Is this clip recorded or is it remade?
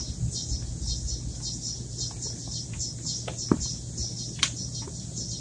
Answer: recorded